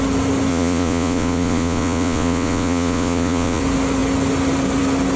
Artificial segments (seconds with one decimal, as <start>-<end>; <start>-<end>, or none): 0.5-3.6